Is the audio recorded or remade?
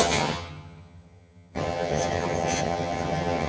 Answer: remade